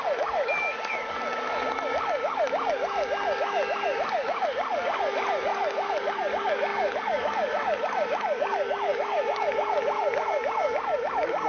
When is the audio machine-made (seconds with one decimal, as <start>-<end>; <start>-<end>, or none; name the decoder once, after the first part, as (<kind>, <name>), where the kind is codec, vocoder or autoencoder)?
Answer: 0.0-11.5 (codec, DAC)